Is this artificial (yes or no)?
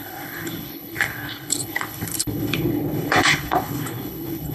yes